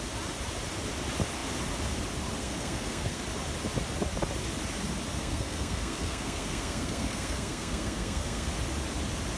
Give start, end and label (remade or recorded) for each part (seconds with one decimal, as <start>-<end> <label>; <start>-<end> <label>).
0.0-2.4 recorded; 2.4-3.2 remade; 3.2-5.2 recorded; 5.2-8.5 remade; 8.5-9.4 recorded

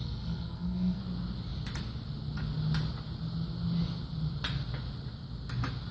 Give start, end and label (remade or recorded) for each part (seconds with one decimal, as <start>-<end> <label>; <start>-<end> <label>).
0.0-1.0 remade; 1.0-5.9 recorded

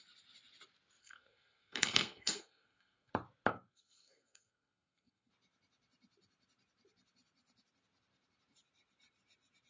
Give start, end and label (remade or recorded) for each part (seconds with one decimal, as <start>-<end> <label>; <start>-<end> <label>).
0.0-1.0 recorded; 1.0-3.1 remade; 3.1-3.5 recorded; 3.5-5.3 remade; 5.3-9.7 recorded

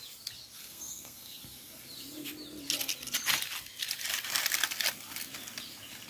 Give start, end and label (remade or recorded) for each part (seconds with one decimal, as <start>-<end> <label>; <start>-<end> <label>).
0.0-0.6 recorded; 0.6-1.4 remade; 1.4-6.1 recorded

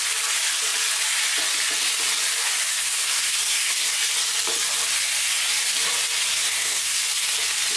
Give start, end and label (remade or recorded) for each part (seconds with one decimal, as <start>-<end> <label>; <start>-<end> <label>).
0.0-2.8 recorded; 2.8-3.9 remade; 3.9-6.3 recorded; 6.3-7.0 remade; 7.0-7.8 recorded

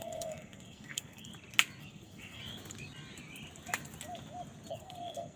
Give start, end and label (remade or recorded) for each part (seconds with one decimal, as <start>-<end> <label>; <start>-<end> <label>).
0.0-1.3 remade; 1.3-1.8 recorded; 1.8-2.4 remade; 2.4-4.7 recorded; 4.7-5.4 remade

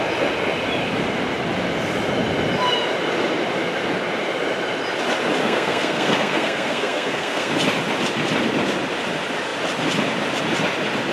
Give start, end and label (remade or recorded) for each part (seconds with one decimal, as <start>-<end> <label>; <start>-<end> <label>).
0.0-5.4 recorded; 5.4-7.5 remade; 7.5-11.1 recorded